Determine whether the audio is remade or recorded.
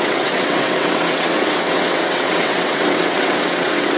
remade